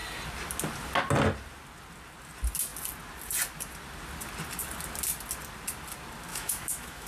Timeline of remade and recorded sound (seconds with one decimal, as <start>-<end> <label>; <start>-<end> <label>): 0.0-6.3 recorded; 6.3-7.1 remade